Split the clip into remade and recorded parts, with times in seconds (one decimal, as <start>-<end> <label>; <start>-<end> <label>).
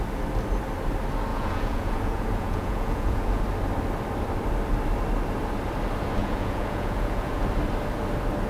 0.0-1.3 recorded; 1.3-3.4 remade; 3.4-6.2 recorded; 6.2-7.4 remade; 7.4-8.5 recorded